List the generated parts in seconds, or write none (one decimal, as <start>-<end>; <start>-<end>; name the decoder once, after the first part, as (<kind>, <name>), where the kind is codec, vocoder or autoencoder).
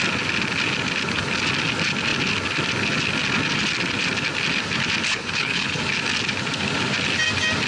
5.1-5.8 (codec, HILCodec)